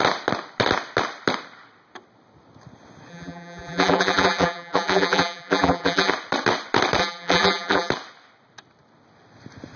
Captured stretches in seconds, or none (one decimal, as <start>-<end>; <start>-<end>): 0.0-3.1; 6.1-7.0; 7.9-9.8